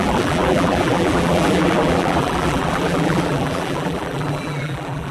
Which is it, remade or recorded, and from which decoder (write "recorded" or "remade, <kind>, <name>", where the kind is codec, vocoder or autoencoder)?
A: remade, vocoder, BigVGAN v2